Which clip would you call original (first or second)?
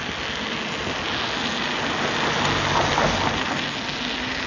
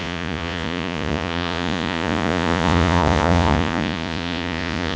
first